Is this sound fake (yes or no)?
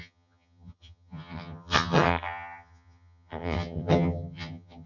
yes